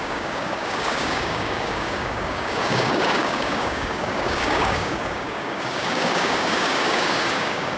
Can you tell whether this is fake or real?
fake